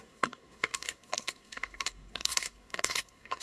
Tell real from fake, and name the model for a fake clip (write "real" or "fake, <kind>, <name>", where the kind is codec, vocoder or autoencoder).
fake, codec, SNAC